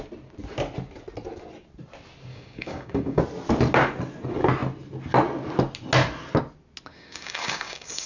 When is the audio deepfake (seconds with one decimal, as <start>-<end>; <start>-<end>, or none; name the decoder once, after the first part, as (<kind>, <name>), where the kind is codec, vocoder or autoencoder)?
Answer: 2.3-3.2 (codec, DAC); 6.9-8.1